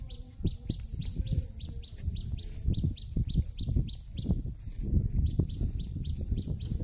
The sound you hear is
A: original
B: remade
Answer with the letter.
A